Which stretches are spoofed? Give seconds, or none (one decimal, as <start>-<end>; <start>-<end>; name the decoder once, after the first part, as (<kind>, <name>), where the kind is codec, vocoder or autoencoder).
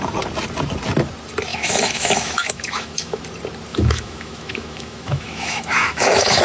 1.5-3.2 (autoencoder, DAC-VAE); 3.7-6.4